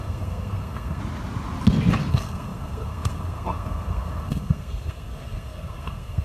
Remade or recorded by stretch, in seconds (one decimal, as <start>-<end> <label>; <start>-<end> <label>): 0.0-1.0 remade; 1.0-2.1 recorded; 2.1-6.2 remade